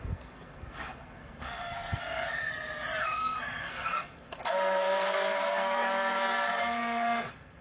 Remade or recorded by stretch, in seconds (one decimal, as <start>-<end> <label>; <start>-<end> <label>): 0.0-2.5 remade; 2.5-3.0 recorded; 3.0-7.6 remade